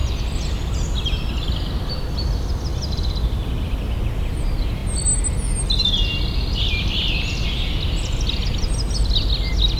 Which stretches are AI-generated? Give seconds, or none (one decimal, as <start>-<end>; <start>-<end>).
none